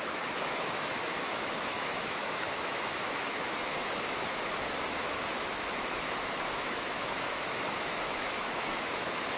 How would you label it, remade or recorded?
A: remade